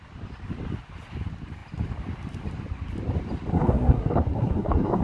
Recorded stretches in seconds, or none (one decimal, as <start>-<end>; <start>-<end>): 0.0-3.5